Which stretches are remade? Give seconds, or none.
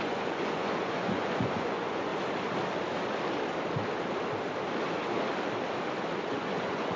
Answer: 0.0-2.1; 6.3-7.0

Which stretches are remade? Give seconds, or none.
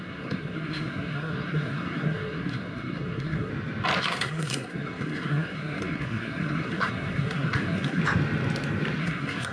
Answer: 0.0-3.5; 4.0-8.0; 9.0-9.5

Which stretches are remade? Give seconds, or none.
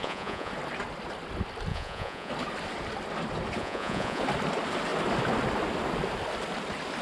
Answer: 0.0-0.5; 1.7-2.3; 3.6-4.2